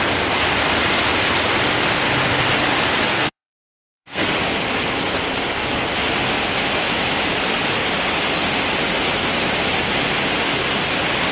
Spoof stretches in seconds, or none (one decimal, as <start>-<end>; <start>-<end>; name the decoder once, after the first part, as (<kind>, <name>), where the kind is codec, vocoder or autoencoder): 3.1-4.3 (codec, SNAC)

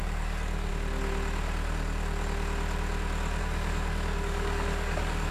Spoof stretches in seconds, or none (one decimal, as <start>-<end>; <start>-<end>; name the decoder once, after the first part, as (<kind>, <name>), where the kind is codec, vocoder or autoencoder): 0.0-0.7 (codec, DAC); 3.4-5.3

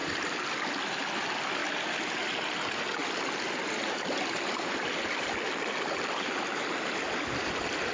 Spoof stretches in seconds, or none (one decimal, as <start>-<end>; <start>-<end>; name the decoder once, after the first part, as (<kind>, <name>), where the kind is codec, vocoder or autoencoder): 0.0-0.7 (vocoder, BigVGAN v2)

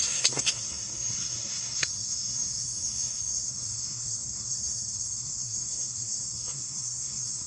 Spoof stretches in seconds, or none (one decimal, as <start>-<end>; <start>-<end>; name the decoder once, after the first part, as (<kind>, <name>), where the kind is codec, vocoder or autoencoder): 0.0-7.5 (codec, SNAC)